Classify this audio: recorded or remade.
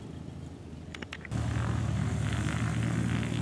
recorded